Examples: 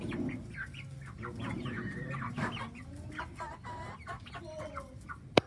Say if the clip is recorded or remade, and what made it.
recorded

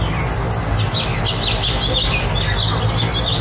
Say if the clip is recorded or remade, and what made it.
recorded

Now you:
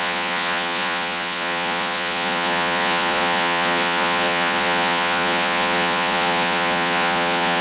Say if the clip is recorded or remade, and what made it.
remade, vocoder, Vocos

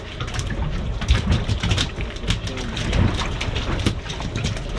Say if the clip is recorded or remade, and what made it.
recorded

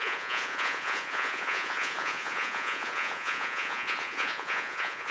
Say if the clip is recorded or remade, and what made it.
remade, vocoder, Vocos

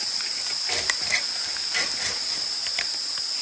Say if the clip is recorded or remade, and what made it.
recorded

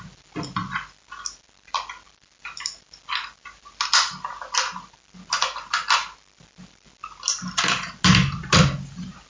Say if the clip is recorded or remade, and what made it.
recorded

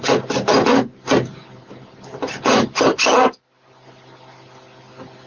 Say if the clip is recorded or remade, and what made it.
recorded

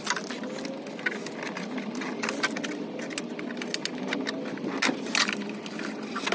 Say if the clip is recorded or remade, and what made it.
recorded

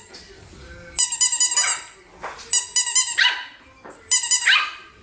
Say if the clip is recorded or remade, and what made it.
recorded